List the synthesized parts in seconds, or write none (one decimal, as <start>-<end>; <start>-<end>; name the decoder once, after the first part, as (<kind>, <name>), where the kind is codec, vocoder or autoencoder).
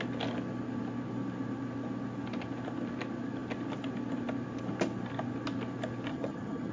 6.1-6.7 (vocoder, HiFi-GAN)